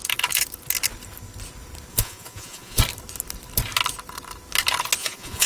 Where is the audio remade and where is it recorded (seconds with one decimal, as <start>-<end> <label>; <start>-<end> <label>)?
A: 0.0-1.9 recorded; 1.9-2.8 remade; 2.8-5.0 recorded; 5.0-5.5 remade